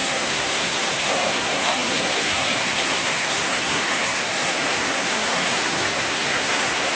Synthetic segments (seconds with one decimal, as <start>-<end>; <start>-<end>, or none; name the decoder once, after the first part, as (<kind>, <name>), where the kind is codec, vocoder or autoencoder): 0.0-7.0 (codec, SNAC)

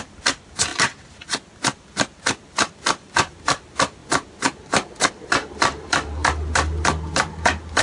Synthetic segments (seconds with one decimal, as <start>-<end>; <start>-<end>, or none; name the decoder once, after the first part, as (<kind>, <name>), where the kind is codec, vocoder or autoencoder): 0.0-0.7 (vocoder, BigVGAN v2); 2.7-4.0; 5.0-6.2

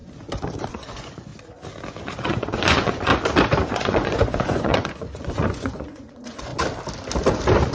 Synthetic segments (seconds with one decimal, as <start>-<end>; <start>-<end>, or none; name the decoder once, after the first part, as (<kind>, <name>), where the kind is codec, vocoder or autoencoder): 0.7-1.3 (vocoder, Vocos); 2.0-3.1; 3.7-6.5

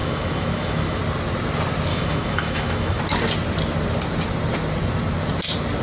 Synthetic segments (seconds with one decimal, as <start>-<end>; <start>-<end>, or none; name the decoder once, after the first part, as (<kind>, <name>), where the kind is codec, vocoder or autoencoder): 0.0-1.0 (autoencoder, DAC-VAE); 1.9-3.0

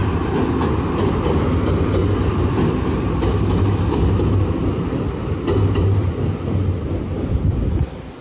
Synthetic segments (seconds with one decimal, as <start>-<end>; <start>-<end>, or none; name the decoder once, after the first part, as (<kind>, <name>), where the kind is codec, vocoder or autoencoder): none